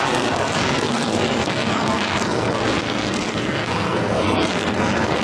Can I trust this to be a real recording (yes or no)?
no